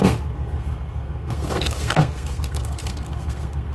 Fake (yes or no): yes